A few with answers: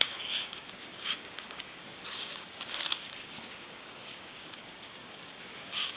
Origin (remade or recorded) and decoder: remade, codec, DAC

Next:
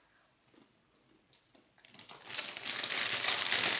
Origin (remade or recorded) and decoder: recorded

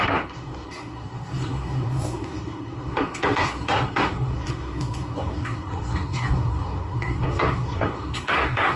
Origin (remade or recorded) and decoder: remade, codec, SNAC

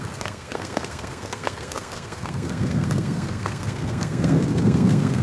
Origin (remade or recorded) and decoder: remade, codec, SNAC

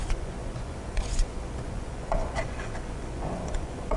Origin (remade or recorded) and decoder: remade, vocoder, Vocos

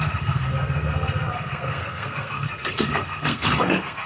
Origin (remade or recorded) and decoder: remade, codec, SNAC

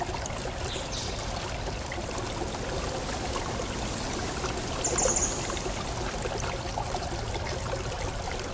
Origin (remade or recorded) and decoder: recorded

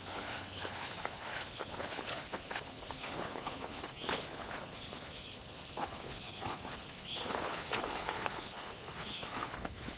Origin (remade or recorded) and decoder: remade, codec, HILCodec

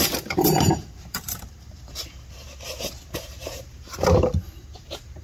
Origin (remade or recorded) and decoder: remade, vocoder, BigVGAN v2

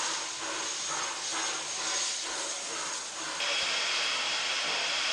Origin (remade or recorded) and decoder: recorded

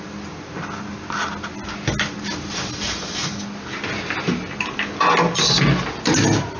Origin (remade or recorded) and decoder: recorded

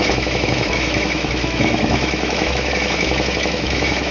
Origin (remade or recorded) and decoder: remade, autoencoder, DAC-VAE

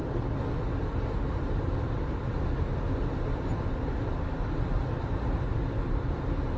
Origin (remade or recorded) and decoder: recorded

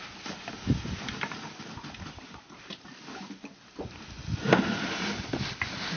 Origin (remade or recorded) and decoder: recorded